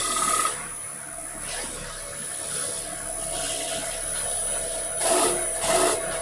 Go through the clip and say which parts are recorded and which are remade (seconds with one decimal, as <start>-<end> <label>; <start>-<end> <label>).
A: 0.0-6.2 recorded

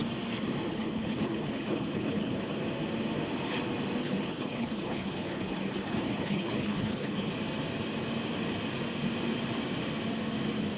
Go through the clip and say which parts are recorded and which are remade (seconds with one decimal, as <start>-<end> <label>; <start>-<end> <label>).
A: 0.0-0.7 recorded; 0.7-2.6 remade; 2.6-4.0 recorded; 4.0-7.3 remade; 7.3-10.8 recorded